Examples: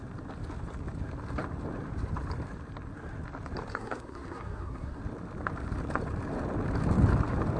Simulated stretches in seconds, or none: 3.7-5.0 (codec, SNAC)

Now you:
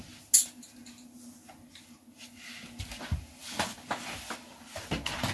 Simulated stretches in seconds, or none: none

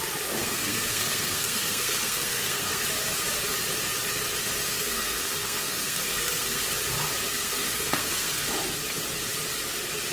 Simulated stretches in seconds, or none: 0.4-2.8 (codec, SNAC); 4.7-6.6; 7.3-8.5

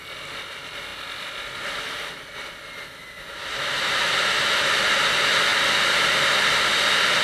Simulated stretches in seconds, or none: none